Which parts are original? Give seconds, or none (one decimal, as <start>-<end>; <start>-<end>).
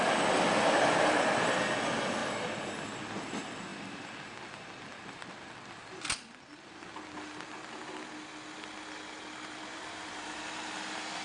0.0-9.7; 10.4-11.2